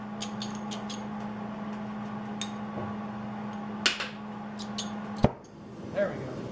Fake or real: real